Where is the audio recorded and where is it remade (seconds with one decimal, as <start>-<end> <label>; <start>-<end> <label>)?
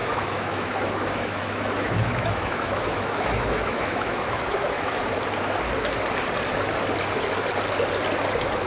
0.0-5.0 remade; 5.0-8.7 recorded